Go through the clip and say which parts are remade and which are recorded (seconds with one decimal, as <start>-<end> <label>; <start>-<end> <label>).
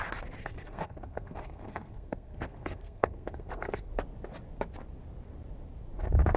0.0-0.4 recorded; 0.4-3.9 remade; 3.9-6.4 recorded